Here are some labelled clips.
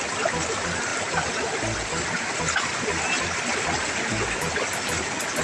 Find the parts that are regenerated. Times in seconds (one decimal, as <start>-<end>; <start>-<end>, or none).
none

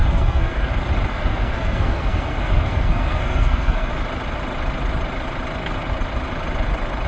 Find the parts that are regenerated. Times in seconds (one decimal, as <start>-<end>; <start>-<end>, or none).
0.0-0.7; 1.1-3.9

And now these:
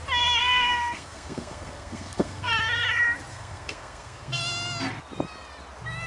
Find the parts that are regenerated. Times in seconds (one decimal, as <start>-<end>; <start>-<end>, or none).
0.4-2.5; 3.3-4.4

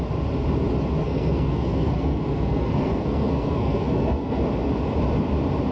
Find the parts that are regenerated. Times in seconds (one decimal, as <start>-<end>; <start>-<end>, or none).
1.0-4.4